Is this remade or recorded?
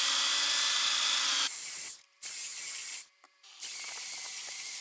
remade